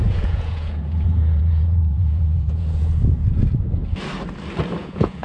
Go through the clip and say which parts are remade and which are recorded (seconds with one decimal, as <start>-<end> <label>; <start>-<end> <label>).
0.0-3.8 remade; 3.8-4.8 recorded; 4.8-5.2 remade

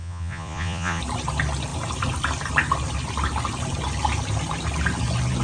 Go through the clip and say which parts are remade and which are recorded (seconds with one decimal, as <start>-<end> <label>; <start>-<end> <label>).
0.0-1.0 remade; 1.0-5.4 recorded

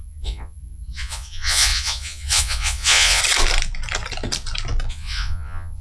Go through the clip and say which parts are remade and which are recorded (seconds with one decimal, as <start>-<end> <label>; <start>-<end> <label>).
0.0-3.2 remade; 3.2-4.9 recorded; 4.9-5.8 remade

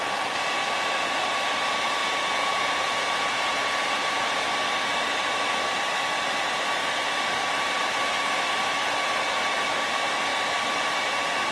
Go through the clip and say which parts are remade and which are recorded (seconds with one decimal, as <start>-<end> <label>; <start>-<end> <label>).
0.0-2.0 recorded; 2.0-3.7 remade; 3.7-11.5 recorded

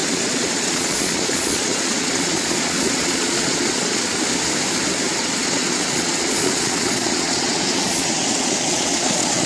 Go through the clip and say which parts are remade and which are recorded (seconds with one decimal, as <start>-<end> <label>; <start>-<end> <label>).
0.0-4.1 remade; 4.1-5.2 recorded; 5.2-9.5 remade